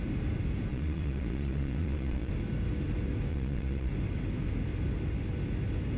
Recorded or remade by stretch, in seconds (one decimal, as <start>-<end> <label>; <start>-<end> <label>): 0.0-0.7 recorded; 0.7-2.3 remade; 2.3-3.3 recorded; 3.3-3.9 remade; 3.9-6.0 recorded